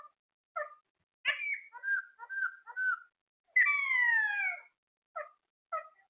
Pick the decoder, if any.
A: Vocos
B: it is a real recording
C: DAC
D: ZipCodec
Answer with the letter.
B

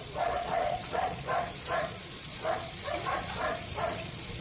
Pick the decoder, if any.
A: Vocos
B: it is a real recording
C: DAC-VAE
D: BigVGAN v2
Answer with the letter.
A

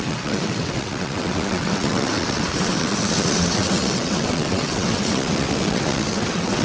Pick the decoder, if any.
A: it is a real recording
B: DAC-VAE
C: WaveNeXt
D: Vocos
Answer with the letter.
C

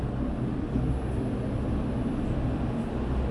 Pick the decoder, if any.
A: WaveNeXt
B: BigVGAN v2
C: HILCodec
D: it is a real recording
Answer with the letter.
D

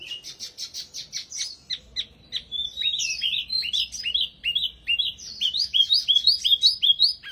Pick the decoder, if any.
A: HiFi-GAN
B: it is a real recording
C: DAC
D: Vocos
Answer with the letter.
B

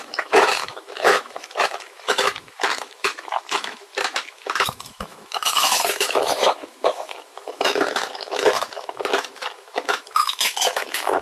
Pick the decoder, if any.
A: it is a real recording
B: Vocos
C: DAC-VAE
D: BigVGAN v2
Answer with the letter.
C